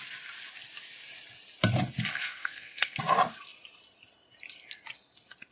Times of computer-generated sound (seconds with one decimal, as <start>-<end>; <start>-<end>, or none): 2.1-3.0